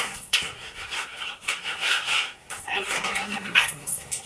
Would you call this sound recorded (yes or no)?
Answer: no